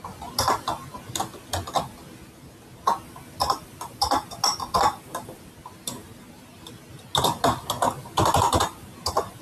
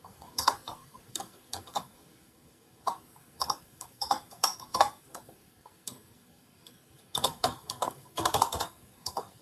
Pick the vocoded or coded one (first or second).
second